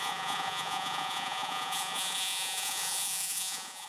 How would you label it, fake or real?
fake